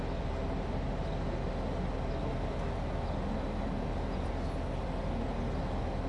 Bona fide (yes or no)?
yes